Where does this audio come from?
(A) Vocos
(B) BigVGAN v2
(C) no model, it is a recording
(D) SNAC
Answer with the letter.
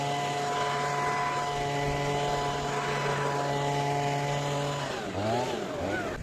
C